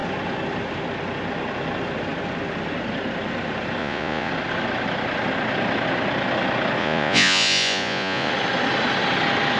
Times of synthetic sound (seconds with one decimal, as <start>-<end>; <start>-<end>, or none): 3.8-4.3; 6.8-8.3